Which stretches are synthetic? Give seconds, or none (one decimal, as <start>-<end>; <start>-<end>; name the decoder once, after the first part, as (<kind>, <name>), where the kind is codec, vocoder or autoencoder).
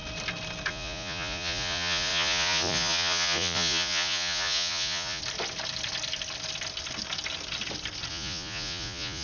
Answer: 0.7-5.2 (vocoder, Vocos); 8.1-9.2